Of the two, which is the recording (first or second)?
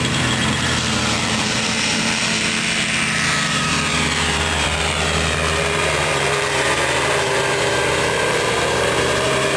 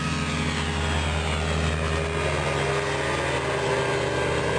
second